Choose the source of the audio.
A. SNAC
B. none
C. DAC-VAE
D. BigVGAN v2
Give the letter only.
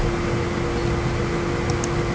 B